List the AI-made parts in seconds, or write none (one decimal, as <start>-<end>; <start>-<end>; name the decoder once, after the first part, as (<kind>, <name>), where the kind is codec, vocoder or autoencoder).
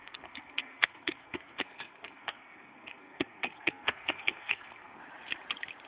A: 0.0-5.0 (codec, SNAC)